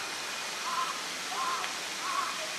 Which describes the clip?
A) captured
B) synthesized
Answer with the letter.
A